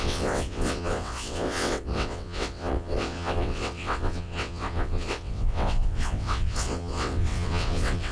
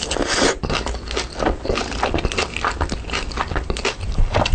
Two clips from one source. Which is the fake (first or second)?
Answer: first